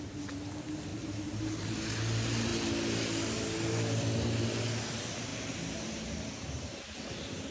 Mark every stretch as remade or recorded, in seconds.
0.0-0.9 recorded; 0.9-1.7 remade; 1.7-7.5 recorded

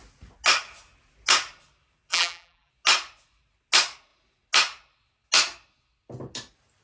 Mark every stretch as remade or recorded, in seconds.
0.0-2.1 recorded; 2.1-2.7 remade; 2.7-6.8 recorded

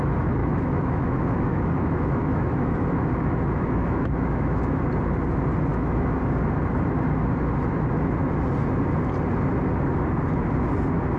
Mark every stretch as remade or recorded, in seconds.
0.0-0.4 recorded; 0.4-4.8 remade; 4.8-5.7 recorded; 5.7-6.2 remade; 6.2-11.2 recorded